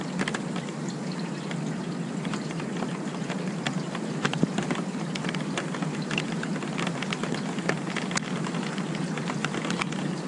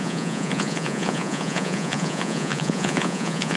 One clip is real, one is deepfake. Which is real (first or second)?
first